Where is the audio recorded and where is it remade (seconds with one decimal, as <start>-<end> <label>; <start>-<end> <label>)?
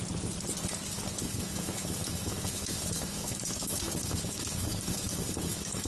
0.0-1.2 recorded; 1.2-5.9 remade